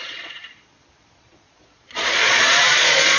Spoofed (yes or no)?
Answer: yes